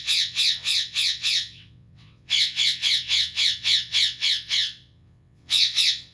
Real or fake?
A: fake